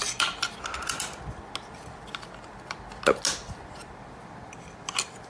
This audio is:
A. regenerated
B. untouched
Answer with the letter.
B